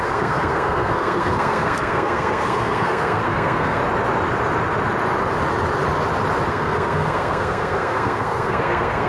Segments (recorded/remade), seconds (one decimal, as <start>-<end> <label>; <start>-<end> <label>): 0.0-3.8 remade; 3.8-6.5 recorded; 6.5-9.1 remade